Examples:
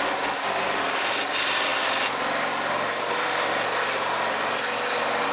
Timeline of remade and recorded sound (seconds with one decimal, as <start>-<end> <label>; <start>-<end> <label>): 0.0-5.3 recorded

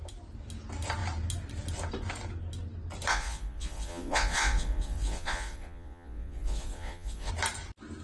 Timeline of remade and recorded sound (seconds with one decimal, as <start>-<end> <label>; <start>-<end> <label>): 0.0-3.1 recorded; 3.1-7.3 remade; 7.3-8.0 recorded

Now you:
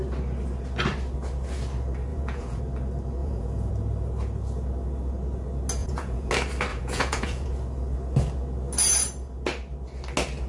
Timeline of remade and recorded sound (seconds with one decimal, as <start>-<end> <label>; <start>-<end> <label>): 0.0-2.1 recorded; 2.1-2.6 remade; 2.6-3.2 recorded; 3.2-3.7 remade; 3.7-5.8 recorded; 5.8-6.3 remade; 6.3-6.7 recorded; 6.7-7.5 remade; 7.5-10.5 recorded

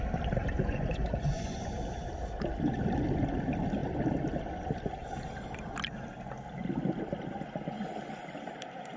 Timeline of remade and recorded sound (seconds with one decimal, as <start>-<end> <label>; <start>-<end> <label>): 0.0-0.4 recorded; 0.4-1.7 remade; 1.7-9.0 recorded

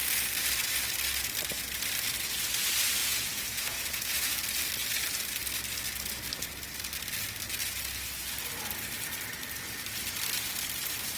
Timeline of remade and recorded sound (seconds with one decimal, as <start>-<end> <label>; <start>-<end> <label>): 0.0-3.0 recorded; 3.0-4.3 remade; 4.3-11.2 recorded

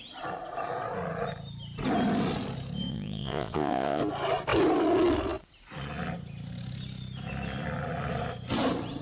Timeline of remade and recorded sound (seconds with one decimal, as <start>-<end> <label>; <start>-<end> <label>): 0.0-2.9 recorded; 2.9-4.0 remade; 4.0-9.0 recorded

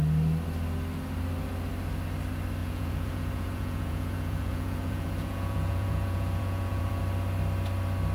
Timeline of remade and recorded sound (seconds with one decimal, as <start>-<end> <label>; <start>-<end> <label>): 0.0-2.6 recorded; 2.6-7.0 remade; 7.0-8.1 recorded